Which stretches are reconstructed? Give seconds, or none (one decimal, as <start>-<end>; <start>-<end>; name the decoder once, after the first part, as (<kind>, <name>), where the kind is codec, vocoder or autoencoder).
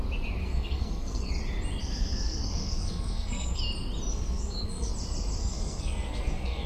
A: 0.4-1.3 (codec, SNAC); 1.8-3.6; 4.1-4.9; 5.4-6.7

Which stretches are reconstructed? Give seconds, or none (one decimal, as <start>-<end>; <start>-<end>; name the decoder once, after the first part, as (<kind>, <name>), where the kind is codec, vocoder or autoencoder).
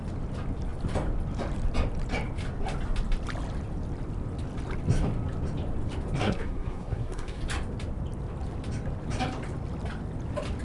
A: 6.2-7.4 (codec, SNAC)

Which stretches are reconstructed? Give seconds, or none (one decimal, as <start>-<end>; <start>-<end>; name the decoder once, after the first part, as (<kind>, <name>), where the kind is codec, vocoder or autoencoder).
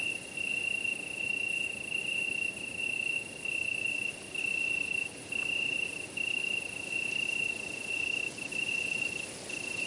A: none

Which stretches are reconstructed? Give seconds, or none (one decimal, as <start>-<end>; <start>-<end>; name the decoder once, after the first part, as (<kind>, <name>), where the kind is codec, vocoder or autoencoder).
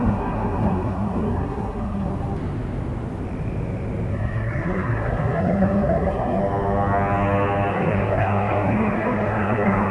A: 0.0-2.1 (codec, SNAC); 4.1-6.4; 7.7-9.9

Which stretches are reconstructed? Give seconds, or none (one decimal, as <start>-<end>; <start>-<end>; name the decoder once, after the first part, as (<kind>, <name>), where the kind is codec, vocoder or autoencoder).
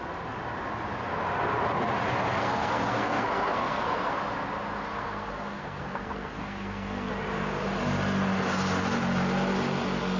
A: 2.3-4.2 (codec, SNAC); 4.9-7.1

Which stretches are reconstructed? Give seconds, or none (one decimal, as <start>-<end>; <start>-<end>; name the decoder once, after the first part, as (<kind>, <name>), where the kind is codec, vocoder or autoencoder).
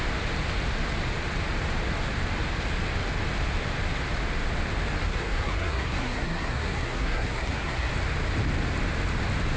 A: 5.1-7.9 (codec, SNAC)